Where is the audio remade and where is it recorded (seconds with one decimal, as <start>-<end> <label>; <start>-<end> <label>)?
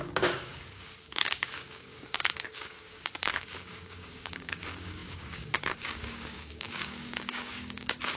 0.0-8.2 remade